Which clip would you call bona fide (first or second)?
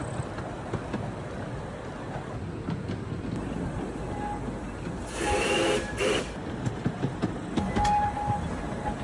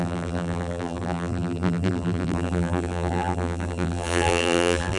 first